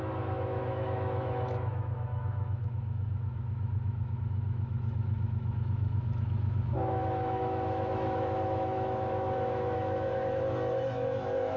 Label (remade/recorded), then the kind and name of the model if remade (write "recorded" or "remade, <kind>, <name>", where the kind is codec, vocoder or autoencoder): remade, autoencoder, DAC-VAE